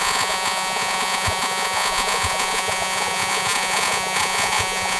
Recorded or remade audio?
remade